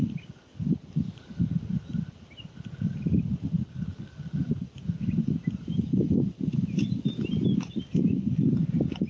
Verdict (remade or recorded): recorded